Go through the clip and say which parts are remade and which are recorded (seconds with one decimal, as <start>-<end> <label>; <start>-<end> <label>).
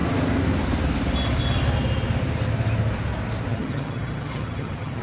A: 0.0-3.5 recorded; 3.5-5.0 remade